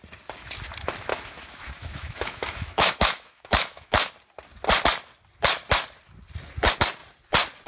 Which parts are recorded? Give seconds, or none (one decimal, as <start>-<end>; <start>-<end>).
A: 0.0-1.1; 4.1-7.7